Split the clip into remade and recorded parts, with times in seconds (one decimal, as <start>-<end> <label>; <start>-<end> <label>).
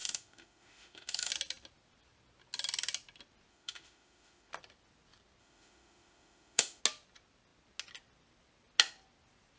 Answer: 0.0-1.3 remade; 1.3-3.5 recorded; 3.5-4.5 remade; 4.5-5.4 recorded; 5.4-6.8 remade; 6.8-9.6 recorded